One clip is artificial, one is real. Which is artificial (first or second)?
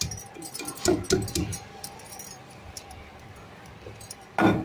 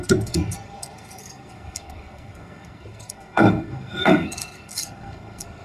second